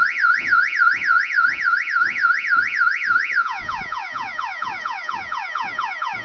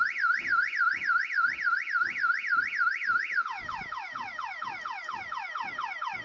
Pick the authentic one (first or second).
second